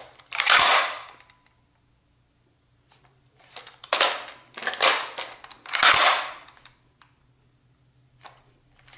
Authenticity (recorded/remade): recorded